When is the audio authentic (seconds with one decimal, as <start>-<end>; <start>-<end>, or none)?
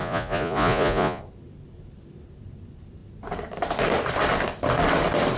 1.2-5.4